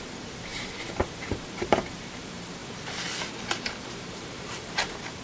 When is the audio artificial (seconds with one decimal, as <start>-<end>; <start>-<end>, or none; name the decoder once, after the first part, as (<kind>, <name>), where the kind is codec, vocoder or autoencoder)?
0.0-5.2 (vocoder, BigVGAN v2)